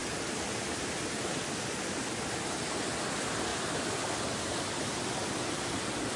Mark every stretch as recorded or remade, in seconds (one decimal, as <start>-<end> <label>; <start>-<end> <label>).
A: 0.0-6.2 recorded